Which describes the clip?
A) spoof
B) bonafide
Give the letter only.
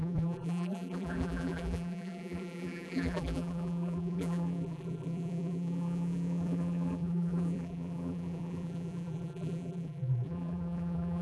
A